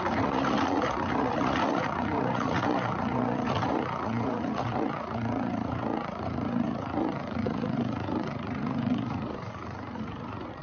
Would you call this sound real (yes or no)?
no